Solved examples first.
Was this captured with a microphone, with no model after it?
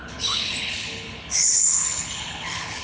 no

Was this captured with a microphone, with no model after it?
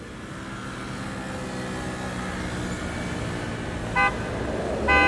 yes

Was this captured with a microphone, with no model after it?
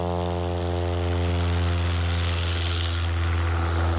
yes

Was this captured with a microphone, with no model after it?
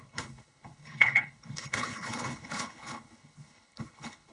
no